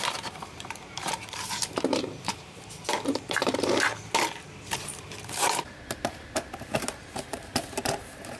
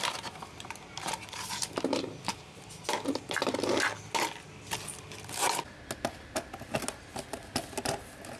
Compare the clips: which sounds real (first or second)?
second